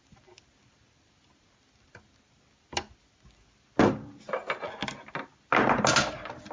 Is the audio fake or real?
real